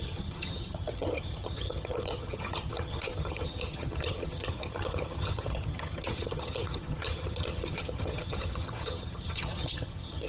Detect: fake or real fake